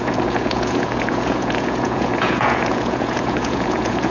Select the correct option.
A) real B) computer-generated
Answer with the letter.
B